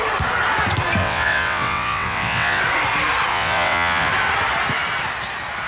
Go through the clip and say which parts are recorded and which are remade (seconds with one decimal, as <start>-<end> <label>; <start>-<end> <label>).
0.0-1.0 recorded; 1.0-2.6 remade; 2.6-3.3 recorded; 3.3-4.1 remade; 4.1-5.7 recorded